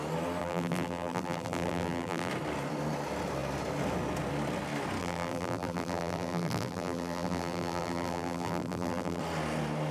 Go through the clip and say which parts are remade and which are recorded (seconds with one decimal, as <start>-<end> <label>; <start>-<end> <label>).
0.0-0.4 recorded; 0.4-2.3 remade; 2.3-5.0 recorded; 5.0-9.2 remade; 9.2-9.9 recorded